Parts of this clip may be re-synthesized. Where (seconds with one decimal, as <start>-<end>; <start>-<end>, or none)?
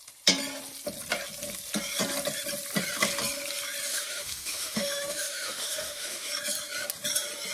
3.9-6.3